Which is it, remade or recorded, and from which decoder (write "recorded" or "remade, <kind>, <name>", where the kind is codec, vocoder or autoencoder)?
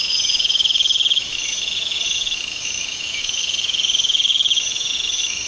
remade, autoencoder, DAC-VAE